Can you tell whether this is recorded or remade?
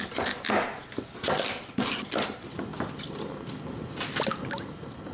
recorded